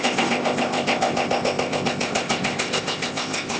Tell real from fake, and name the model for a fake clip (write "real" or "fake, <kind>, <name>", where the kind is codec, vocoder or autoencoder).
fake, codec, ZipCodec